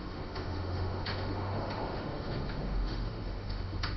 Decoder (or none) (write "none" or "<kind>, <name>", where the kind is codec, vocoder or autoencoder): autoencoder, DAC-VAE